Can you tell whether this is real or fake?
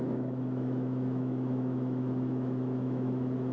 fake